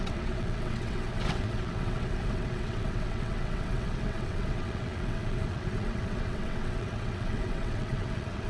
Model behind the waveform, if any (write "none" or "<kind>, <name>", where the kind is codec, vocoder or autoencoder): vocoder, WaveNeXt